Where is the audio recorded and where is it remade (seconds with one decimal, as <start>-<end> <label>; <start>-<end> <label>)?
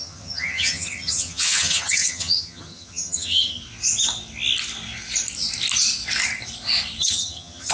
0.0-3.6 remade; 3.6-7.0 recorded; 7.0-7.7 remade